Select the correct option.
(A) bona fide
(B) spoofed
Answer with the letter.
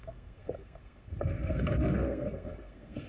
B